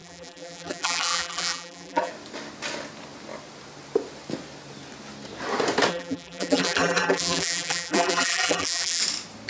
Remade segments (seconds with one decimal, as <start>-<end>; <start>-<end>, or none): 0.0-2.1; 5.9-9.0